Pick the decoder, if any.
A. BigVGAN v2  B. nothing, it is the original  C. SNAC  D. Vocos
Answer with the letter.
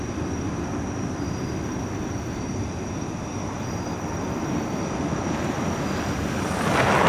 B